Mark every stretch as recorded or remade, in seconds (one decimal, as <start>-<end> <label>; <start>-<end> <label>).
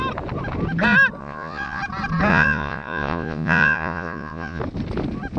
0.0-1.2 recorded; 1.2-1.8 remade; 1.8-2.3 recorded; 2.3-4.6 remade; 4.6-5.4 recorded